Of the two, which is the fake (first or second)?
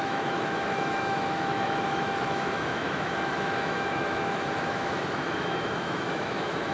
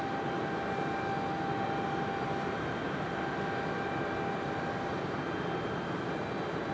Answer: first